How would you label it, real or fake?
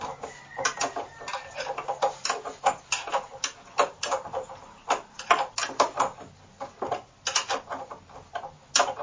real